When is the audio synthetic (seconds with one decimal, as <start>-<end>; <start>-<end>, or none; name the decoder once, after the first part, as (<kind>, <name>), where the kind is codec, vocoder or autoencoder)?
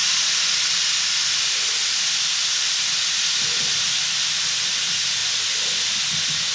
none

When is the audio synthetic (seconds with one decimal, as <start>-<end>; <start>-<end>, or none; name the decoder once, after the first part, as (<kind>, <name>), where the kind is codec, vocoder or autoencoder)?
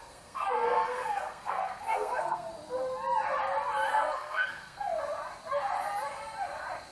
0.0-2.5 (codec, SNAC); 3.9-5.0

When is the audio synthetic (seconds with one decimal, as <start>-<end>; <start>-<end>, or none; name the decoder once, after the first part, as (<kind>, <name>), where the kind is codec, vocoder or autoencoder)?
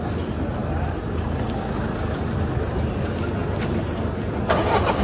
none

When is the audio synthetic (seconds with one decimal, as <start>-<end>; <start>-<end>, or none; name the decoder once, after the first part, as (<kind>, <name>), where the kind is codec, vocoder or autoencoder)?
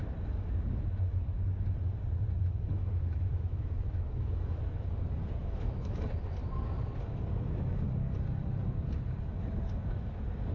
1.1-1.7 (autoencoder, DAC-VAE); 2.4-4.6; 5.4-6.0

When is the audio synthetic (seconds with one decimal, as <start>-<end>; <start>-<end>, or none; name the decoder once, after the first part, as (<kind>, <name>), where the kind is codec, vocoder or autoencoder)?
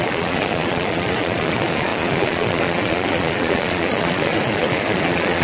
0.0-5.4 (vocoder, Vocos)